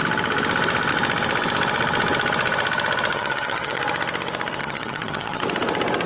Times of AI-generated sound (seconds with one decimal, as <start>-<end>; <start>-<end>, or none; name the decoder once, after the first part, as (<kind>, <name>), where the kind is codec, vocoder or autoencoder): 3.1-3.8 (vocoder, HiFi-GAN); 4.6-5.4